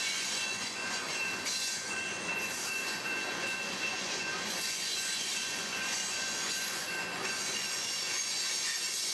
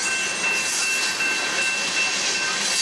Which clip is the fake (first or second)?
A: first